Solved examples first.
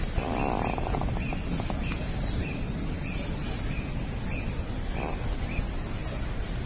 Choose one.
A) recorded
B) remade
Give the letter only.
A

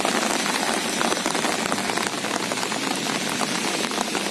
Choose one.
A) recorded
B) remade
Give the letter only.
A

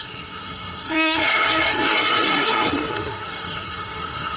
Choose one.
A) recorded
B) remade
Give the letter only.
B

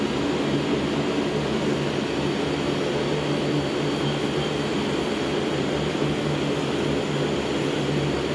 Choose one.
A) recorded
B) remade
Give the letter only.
A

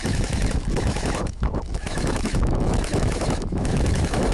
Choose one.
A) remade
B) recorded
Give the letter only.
A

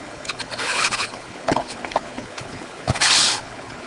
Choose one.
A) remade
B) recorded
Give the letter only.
A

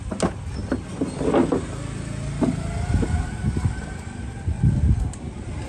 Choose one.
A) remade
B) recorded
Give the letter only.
B